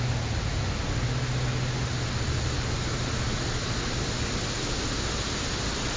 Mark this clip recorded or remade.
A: recorded